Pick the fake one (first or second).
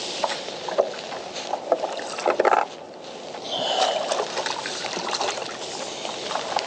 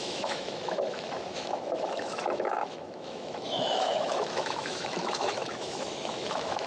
second